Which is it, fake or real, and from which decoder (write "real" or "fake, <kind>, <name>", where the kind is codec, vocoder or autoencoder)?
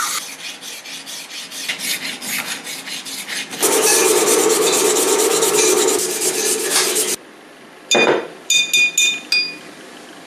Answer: real